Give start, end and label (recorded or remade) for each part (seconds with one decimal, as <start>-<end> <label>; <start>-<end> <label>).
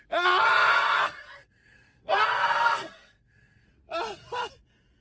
0.0-0.7 recorded; 0.7-3.7 remade; 3.7-5.0 recorded